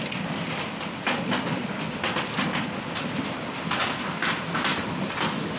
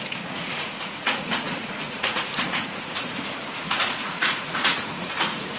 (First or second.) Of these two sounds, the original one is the first